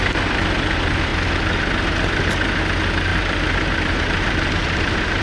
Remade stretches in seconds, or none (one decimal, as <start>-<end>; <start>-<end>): 3.1-5.2